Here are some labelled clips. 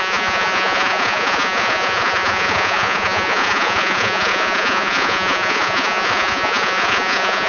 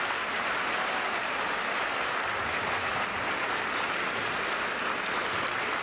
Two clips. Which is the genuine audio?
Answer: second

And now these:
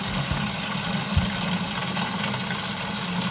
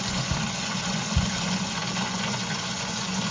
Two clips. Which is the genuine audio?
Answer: first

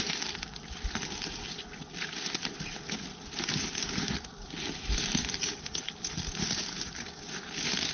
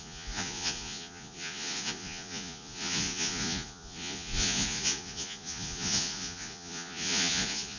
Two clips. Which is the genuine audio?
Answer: first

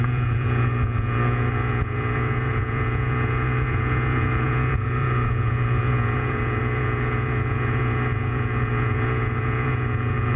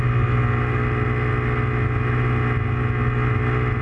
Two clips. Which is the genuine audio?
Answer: second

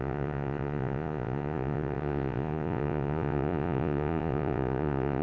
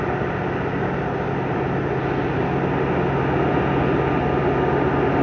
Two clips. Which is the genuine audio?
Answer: second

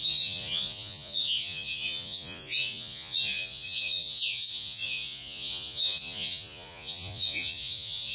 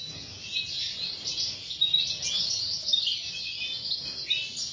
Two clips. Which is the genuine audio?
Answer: second